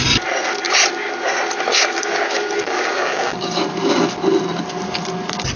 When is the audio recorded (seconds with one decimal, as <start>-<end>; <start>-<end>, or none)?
0.0-1.7; 3.6-5.6